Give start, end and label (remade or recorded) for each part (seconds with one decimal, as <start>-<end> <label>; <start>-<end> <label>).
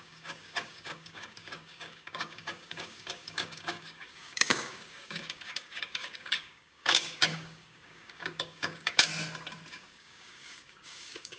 0.0-9.1 remade; 9.1-9.7 recorded; 9.7-11.4 remade